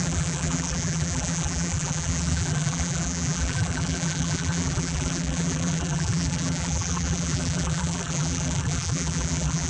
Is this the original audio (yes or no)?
no